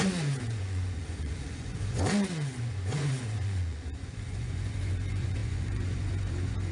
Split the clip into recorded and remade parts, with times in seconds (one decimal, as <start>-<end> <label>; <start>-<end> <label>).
0.0-6.7 remade